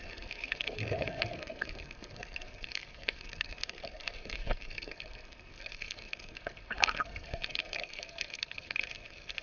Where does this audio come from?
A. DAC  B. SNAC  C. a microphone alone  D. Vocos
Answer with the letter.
B